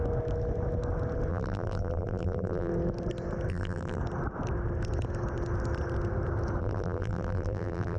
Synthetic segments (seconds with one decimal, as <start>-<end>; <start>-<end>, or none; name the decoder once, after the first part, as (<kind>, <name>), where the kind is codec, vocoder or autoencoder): 1.3-2.7 (vocoder, BigVGAN v2); 3.5-4.0; 6.6-8.0